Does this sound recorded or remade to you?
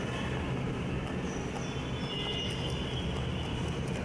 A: recorded